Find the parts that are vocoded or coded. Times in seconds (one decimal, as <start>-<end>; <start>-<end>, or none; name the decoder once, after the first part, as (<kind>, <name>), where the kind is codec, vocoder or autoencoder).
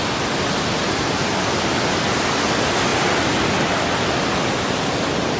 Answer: none